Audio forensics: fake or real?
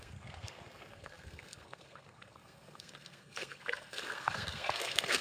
fake